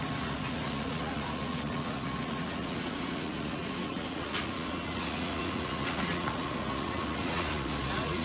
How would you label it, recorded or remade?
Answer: remade